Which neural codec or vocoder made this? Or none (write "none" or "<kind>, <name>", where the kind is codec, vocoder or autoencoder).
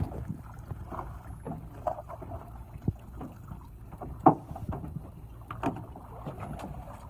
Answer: none